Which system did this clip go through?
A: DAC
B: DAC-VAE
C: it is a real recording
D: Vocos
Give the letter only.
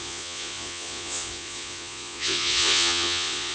D